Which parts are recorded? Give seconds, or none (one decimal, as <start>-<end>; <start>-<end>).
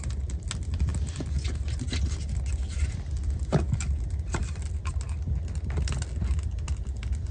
0.0-7.3